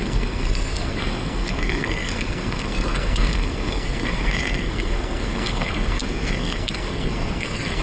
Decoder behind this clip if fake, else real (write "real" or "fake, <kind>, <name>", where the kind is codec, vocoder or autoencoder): fake, codec, SNAC